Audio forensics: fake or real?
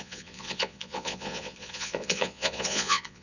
fake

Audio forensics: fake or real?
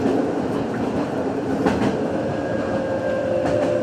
real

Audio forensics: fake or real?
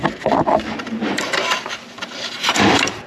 fake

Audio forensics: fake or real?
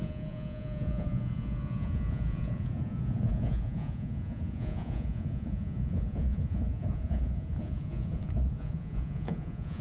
fake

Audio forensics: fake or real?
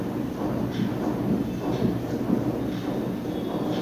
real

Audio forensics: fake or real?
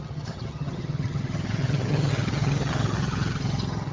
fake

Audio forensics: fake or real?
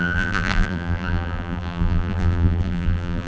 fake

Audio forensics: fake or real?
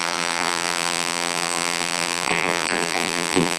fake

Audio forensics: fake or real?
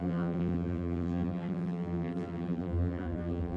fake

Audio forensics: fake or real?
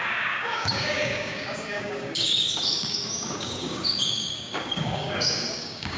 fake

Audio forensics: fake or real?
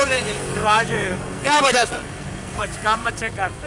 fake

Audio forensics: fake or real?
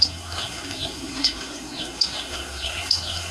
fake